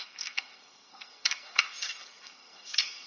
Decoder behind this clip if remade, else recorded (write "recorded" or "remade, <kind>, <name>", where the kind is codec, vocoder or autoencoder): remade, codec, SNAC